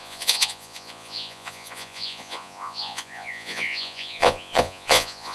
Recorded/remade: remade